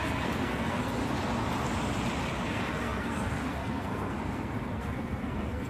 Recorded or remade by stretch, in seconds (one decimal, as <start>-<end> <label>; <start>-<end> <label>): 0.0-1.0 remade; 1.0-2.4 recorded; 2.4-5.7 remade